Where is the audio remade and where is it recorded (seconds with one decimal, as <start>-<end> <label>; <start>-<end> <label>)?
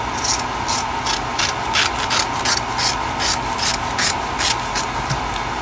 0.0-5.6 recorded